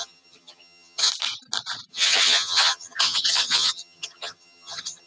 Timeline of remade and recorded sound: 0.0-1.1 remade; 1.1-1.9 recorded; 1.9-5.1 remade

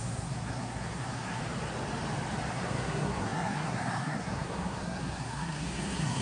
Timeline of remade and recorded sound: 0.0-1.4 remade; 1.4-2.5 recorded; 2.5-6.2 remade

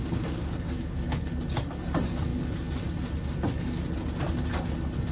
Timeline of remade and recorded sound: 0.0-1.3 remade; 1.3-5.1 recorded

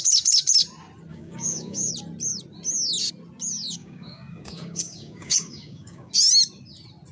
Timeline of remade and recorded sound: 0.0-1.1 recorded; 1.1-1.9 remade; 1.9-3.8 recorded; 3.8-6.1 remade; 6.1-7.1 recorded

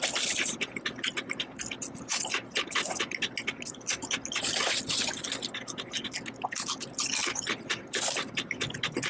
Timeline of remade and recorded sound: 0.0-7.2 recorded; 7.2-8.3 remade; 8.3-9.1 recorded

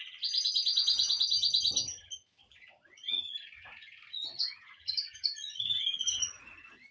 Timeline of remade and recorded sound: 0.0-2.4 recorded; 2.4-6.5 remade; 6.5-6.9 recorded